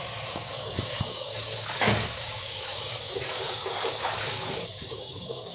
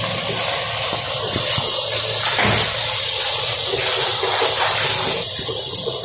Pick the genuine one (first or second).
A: second